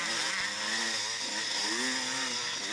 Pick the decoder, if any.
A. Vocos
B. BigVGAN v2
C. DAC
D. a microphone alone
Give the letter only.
D